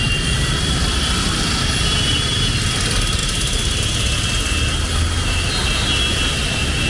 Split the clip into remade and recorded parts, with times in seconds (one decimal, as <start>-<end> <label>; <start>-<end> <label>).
0.0-6.9 recorded